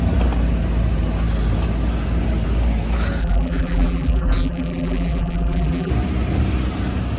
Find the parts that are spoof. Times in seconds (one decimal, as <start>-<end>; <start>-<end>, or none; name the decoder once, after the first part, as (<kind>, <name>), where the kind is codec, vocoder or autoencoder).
3.2-5.9 (vocoder, BigVGAN v2)